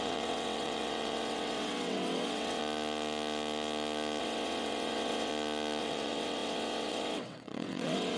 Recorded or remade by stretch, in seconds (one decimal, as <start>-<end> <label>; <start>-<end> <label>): 0.0-2.6 remade; 2.6-4.2 recorded; 4.2-5.3 remade; 5.3-5.8 recorded; 5.8-8.2 remade